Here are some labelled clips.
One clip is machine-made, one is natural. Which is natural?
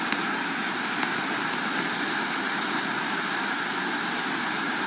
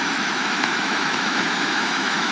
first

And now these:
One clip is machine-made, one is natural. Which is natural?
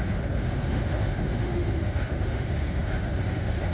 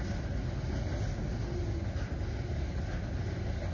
second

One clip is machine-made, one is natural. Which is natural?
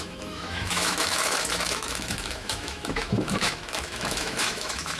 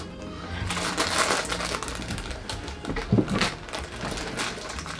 second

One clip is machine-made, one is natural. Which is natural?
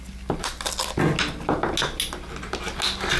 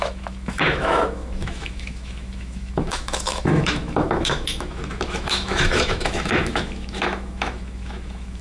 first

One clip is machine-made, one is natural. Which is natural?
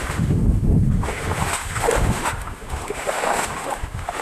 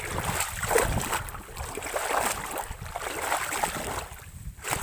second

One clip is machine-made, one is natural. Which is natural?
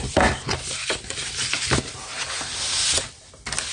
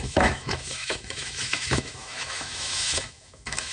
first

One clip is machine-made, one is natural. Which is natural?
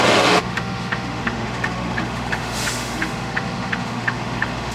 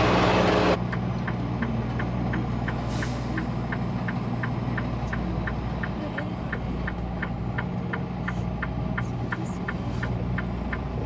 second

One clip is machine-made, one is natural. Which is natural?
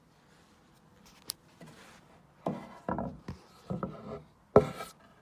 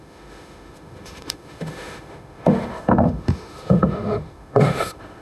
first